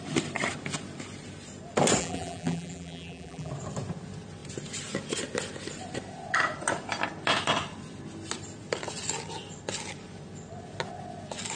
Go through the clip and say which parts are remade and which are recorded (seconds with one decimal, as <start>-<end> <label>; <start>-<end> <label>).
0.0-2.0 recorded; 2.0-3.5 remade; 3.5-11.6 recorded